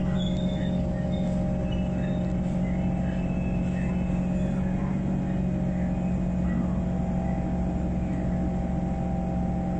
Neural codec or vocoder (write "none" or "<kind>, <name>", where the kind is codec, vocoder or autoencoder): none